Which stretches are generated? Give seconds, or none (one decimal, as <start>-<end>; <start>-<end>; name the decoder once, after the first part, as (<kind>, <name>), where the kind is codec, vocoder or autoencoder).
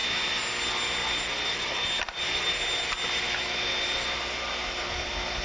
none